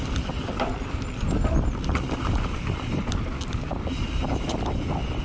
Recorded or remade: recorded